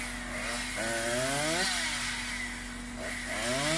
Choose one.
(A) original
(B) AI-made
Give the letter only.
A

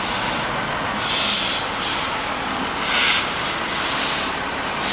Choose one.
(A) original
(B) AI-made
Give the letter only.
A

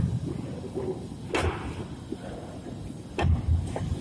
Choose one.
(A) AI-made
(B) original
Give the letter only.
B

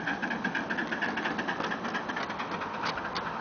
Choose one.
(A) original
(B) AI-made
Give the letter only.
A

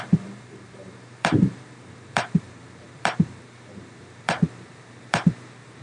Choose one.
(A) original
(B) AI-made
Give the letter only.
B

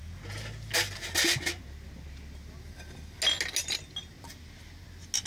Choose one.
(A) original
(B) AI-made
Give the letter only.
A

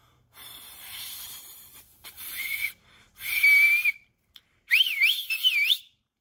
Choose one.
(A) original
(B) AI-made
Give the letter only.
B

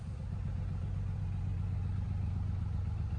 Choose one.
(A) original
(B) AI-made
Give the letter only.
B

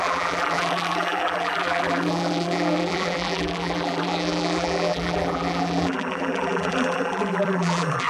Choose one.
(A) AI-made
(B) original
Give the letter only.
A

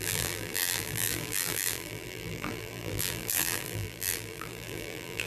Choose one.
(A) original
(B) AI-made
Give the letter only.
B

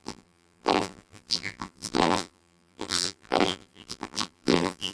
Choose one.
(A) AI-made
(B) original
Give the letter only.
A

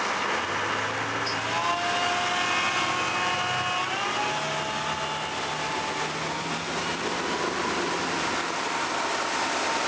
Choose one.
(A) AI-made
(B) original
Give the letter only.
B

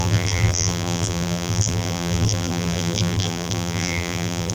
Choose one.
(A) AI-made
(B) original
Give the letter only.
A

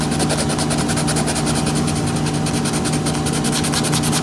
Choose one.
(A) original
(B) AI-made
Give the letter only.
A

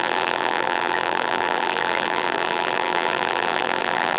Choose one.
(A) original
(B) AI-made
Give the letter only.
B